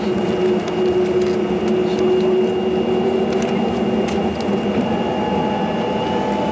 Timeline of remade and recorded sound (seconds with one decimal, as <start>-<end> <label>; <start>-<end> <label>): 0.0-6.5 recorded